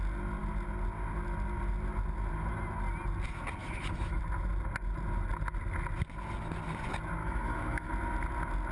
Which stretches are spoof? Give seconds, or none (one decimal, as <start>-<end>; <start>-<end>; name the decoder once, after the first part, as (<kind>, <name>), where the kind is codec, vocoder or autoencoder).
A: 3.6-4.2 (autoencoder, DAC-VAE); 7.2-7.9